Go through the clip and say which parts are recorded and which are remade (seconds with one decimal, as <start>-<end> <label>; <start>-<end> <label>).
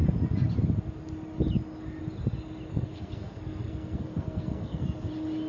0.0-2.7 recorded; 2.7-5.1 remade; 5.1-5.5 recorded